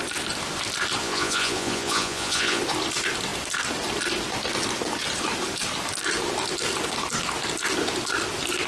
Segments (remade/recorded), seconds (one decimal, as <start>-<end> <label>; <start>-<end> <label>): 0.0-1.0 recorded; 1.0-2.6 remade; 2.6-8.7 recorded